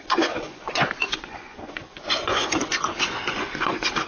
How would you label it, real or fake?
fake